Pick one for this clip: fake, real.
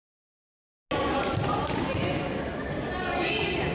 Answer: real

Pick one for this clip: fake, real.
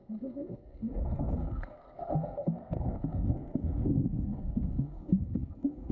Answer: fake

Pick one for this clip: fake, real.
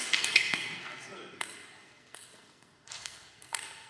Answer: fake